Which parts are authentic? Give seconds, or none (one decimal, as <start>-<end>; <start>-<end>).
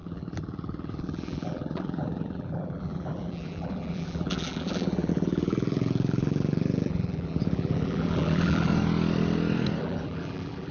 8.7-9.8